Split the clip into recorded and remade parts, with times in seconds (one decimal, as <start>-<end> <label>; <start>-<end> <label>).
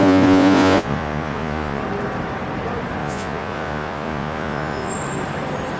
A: 0.0-1.8 remade; 1.8-3.0 recorded; 3.0-4.9 remade; 4.9-5.8 recorded